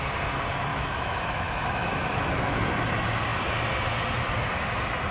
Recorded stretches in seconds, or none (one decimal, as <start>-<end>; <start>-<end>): 0.0-0.7; 2.6-5.1